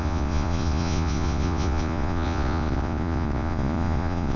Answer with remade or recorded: remade